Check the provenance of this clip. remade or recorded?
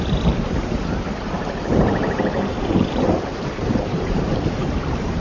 remade